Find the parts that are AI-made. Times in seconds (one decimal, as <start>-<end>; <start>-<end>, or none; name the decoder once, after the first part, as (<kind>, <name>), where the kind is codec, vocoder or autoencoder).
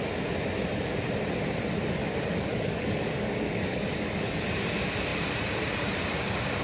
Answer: 2.0-4.3 (codec, DAC)